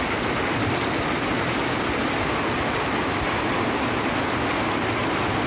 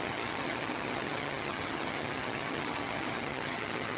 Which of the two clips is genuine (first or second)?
first